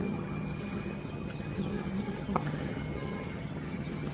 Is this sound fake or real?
fake